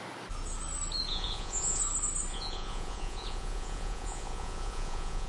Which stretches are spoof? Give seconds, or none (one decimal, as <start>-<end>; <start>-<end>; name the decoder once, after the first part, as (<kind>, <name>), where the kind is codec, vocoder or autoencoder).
1.1-1.8 (vocoder, Vocos); 2.3-5.3